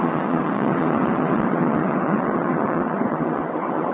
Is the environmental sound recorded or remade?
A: remade